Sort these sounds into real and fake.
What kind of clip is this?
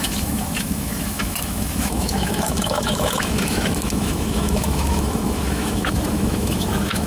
fake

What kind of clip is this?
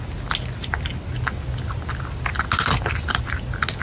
real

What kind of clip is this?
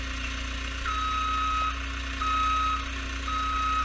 real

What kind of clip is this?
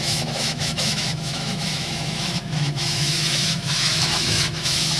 fake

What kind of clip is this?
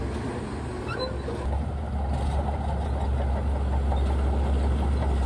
real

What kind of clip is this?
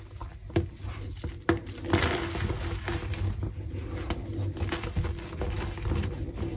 real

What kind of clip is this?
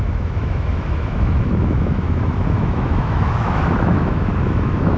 fake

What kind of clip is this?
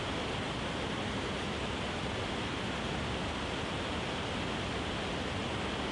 real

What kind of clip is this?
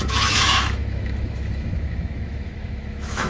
fake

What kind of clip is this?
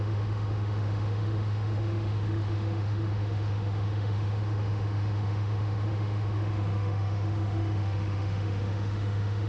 fake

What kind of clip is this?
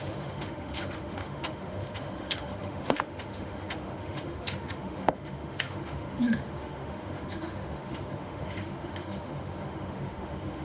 fake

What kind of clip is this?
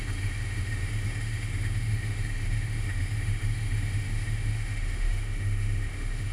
fake